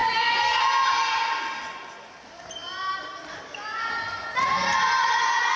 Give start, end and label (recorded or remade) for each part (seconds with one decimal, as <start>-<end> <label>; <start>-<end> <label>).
0.0-5.6 recorded